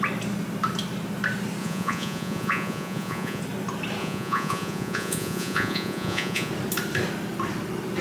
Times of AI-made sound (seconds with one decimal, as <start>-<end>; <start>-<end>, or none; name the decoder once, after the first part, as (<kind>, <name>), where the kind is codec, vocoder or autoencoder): 1.6-3.4 (vocoder, Vocos); 4.0-6.5